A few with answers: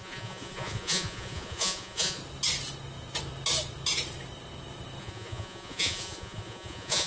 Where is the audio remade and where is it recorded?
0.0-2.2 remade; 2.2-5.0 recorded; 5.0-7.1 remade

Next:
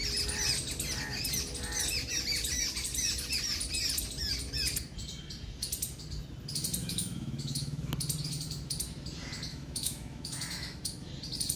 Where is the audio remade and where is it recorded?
0.0-6.8 recorded; 6.8-7.9 remade; 7.9-9.5 recorded; 9.5-11.1 remade; 11.1-11.6 recorded

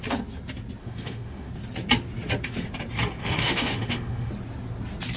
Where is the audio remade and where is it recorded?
0.0-0.8 recorded; 0.8-1.5 remade; 1.5-3.2 recorded; 3.2-4.3 remade; 4.3-5.2 recorded

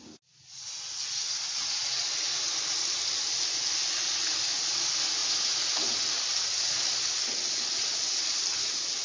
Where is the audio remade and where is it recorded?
0.0-9.0 recorded